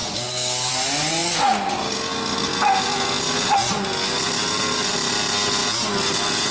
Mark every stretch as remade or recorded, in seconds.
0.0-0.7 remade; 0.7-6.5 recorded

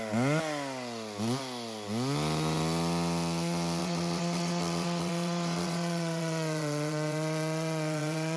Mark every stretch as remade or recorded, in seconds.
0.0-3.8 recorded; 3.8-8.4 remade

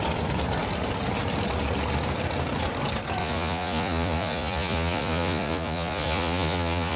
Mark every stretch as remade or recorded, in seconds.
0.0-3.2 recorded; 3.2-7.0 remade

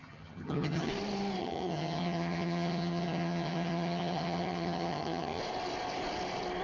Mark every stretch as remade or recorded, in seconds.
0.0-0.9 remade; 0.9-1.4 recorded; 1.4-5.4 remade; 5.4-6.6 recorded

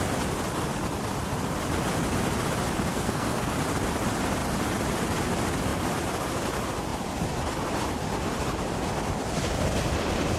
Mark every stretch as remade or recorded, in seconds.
0.0-2.9 recorded; 2.9-3.5 remade; 3.5-10.4 recorded

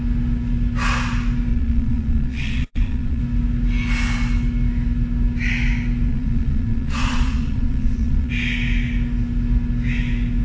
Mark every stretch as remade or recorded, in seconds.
0.0-1.5 recorded; 1.5-3.2 remade; 3.2-6.1 recorded; 6.1-8.3 remade; 8.3-10.4 recorded

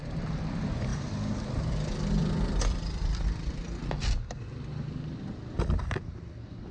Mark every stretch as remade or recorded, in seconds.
0.0-0.9 recorded; 0.9-3.8 remade; 3.8-6.7 recorded

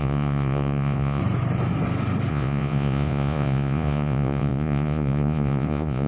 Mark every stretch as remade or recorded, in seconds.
0.0-1.2 remade; 1.2-2.3 recorded; 2.3-6.1 remade